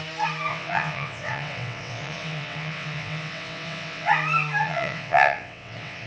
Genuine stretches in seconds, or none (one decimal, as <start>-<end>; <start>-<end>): 0.0-0.5; 4.1-4.6